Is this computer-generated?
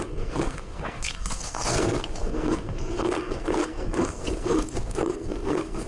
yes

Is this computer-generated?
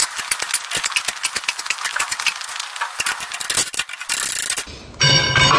no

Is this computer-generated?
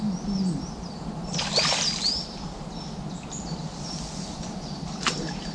no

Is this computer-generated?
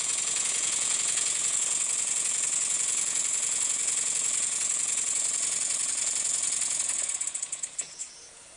yes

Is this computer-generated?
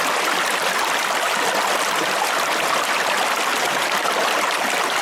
no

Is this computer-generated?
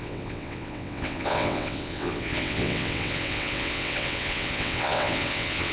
yes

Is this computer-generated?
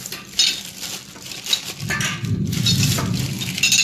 no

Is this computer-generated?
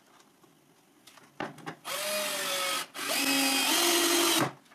no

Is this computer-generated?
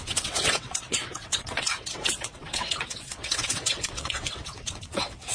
yes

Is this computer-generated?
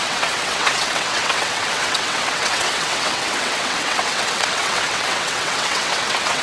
yes